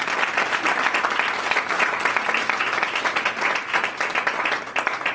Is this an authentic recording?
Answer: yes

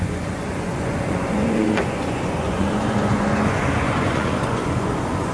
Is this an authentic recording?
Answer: no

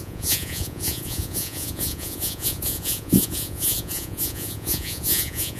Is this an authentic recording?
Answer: no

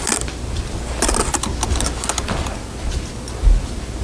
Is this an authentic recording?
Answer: yes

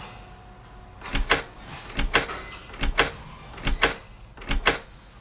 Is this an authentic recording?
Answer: yes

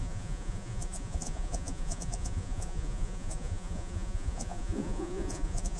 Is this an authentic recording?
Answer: no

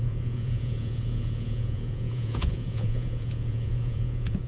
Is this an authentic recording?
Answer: no